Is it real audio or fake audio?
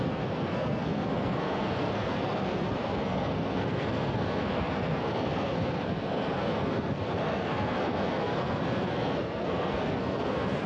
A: fake